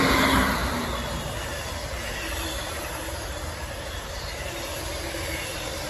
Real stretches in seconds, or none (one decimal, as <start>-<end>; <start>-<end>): none